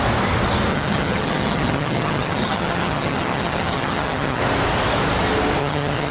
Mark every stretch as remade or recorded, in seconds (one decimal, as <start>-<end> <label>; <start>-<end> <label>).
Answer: 0.0-0.7 recorded; 0.7-4.4 remade; 4.4-5.6 recorded; 5.6-6.1 remade